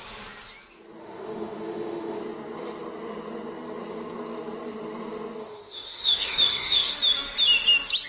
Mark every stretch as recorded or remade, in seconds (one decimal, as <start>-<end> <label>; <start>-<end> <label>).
0.0-1.0 recorded; 1.0-2.2 remade; 2.2-5.4 recorded; 5.4-6.9 remade; 6.9-8.1 recorded